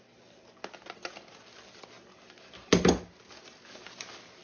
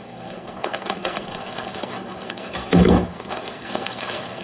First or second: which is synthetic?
second